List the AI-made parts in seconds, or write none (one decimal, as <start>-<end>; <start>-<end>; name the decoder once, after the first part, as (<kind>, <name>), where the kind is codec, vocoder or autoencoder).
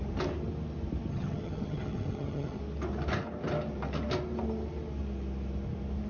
1.1-2.6 (vocoder, HiFi-GAN)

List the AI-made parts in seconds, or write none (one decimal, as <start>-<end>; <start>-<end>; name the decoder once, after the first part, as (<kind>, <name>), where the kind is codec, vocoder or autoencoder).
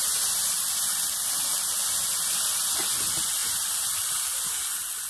3.4-4.5 (vocoder, BigVGAN v2)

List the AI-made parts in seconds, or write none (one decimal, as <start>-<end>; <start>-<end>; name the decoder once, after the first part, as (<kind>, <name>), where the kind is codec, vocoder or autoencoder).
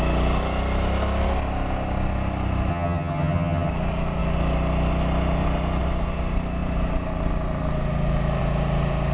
2.7-3.7 (vocoder, HiFi-GAN)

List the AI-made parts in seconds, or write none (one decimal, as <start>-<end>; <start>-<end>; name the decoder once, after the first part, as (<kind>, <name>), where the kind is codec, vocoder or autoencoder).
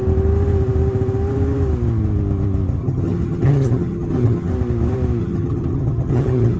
2.8-4.5 (vocoder, HiFi-GAN); 5.2-6.6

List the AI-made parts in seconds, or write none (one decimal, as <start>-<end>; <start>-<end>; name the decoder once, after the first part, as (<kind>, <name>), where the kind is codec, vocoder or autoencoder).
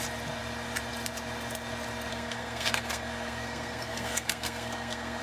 2.1-5.2 (codec, SNAC)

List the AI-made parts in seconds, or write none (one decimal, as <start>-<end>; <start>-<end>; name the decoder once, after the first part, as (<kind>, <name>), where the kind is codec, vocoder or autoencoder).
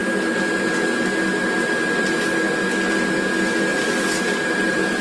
3.7-4.4 (vocoder, BigVGAN v2)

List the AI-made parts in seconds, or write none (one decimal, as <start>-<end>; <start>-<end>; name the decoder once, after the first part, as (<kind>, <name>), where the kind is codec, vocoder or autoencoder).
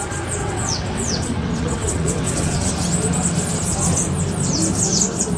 0.4-2.7 (vocoder, WaveNeXt)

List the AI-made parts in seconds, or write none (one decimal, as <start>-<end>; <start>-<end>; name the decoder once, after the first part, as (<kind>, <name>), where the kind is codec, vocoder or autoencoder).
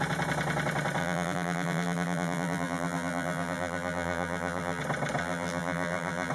1.0-4.8 (vocoder, BigVGAN v2); 5.2-6.3